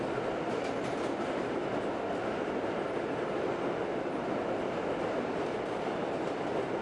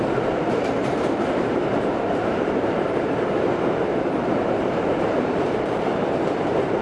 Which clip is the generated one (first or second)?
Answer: second